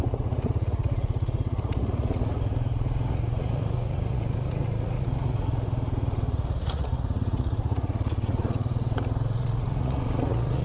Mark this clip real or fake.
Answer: fake